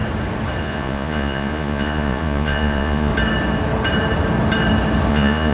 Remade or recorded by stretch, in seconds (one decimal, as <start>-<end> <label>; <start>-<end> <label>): 0.0-0.6 recorded; 0.6-3.1 remade; 3.1-5.1 recorded; 5.1-5.5 remade